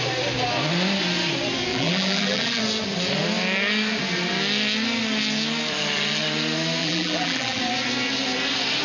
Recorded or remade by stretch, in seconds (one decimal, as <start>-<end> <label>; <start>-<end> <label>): 0.0-1.7 recorded; 1.7-2.6 remade; 2.6-6.8 recorded; 6.8-7.6 remade; 7.6-8.8 recorded